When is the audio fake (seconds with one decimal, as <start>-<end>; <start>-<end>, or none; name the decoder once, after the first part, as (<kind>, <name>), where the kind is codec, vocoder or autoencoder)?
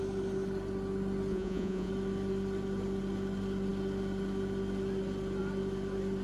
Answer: 1.3-1.9 (vocoder, Vocos)